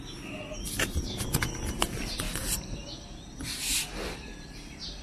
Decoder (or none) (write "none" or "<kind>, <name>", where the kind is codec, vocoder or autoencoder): none